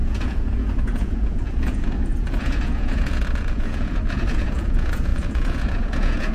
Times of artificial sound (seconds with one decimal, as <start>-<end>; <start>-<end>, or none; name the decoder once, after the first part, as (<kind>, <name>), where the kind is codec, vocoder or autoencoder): 0.0-6.3 (vocoder, Vocos)